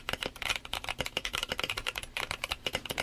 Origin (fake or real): fake